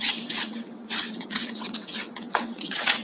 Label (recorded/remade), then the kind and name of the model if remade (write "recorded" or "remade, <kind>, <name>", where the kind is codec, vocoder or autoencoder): remade, vocoder, WaveNeXt